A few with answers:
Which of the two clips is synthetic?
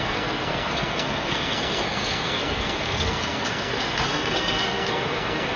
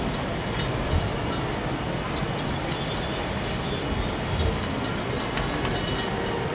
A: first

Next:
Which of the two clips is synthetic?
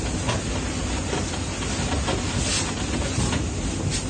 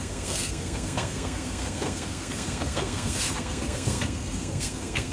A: second